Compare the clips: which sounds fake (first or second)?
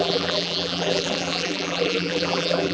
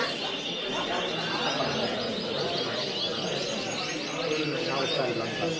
first